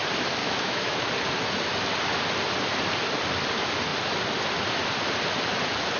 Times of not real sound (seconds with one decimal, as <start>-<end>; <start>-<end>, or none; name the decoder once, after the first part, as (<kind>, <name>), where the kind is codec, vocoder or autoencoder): 0.4-1.1 (autoencoder, DAC-VAE)